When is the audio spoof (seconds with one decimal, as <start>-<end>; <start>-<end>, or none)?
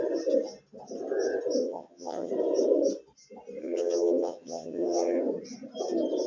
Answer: 1.6-2.3; 3.6-5.2